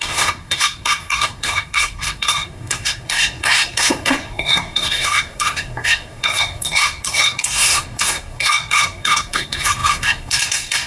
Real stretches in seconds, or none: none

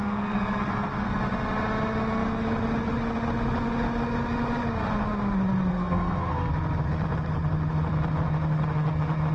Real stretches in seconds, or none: 1.1-5.7; 6.5-9.3

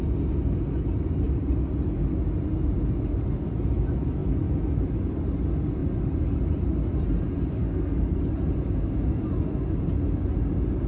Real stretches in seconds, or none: 0.0-7.6; 8.2-10.9